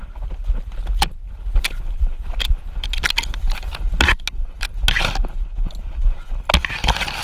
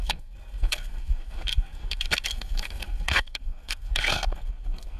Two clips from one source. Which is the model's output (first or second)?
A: second